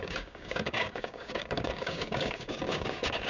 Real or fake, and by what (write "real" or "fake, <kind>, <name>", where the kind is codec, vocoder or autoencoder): fake, codec, DAC